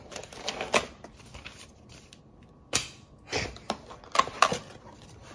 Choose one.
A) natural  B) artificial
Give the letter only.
A